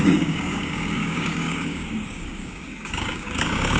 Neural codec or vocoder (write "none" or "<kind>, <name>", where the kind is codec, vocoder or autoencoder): codec, DAC